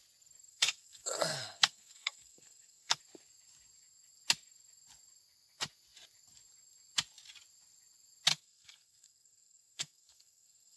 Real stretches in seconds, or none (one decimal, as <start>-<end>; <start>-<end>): 0.0-0.5; 3.0-8.3